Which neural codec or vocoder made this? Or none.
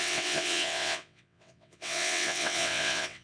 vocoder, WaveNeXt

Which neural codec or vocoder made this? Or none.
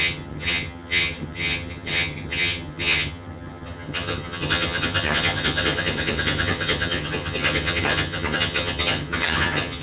vocoder, HiFi-GAN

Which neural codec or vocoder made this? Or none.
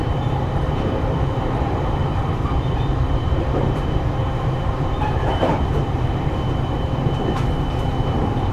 vocoder, BigVGAN v2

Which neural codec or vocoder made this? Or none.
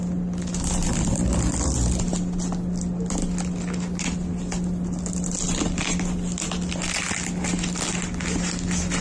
none